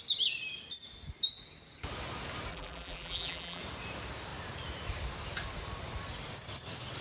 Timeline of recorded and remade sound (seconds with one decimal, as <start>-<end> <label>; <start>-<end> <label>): 0.0-2.5 recorded; 2.5-3.6 remade; 3.6-7.0 recorded